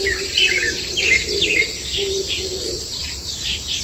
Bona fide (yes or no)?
no